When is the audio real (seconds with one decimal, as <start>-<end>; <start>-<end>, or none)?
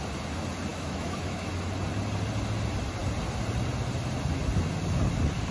0.0-0.7; 1.5-5.5